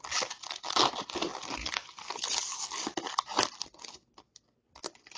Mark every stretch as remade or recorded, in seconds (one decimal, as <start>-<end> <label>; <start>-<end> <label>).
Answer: 0.0-5.2 recorded